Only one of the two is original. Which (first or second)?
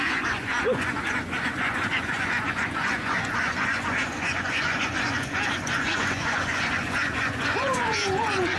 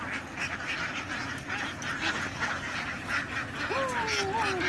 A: second